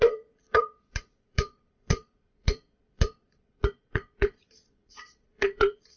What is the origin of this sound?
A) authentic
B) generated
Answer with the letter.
B